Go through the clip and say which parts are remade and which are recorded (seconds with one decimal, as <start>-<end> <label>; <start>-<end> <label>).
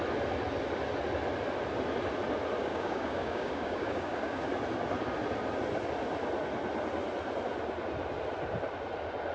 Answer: 0.0-2.6 recorded; 2.6-4.5 remade; 4.5-9.3 recorded